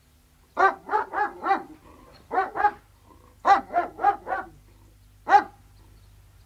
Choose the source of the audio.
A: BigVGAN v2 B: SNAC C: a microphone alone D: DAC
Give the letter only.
C